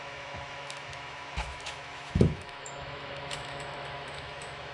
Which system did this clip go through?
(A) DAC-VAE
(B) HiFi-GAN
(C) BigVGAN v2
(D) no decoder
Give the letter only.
A